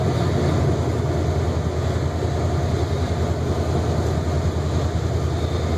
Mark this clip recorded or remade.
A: recorded